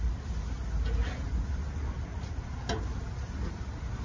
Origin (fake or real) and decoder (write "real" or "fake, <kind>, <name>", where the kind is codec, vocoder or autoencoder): real